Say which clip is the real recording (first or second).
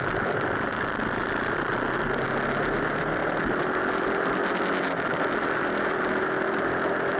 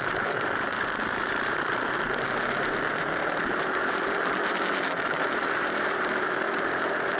first